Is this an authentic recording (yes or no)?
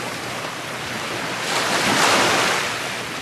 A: yes